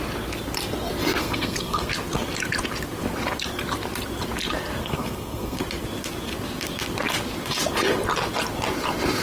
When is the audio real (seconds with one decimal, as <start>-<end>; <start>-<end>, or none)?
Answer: 0.0-1.2; 1.9-4.8; 5.6-9.2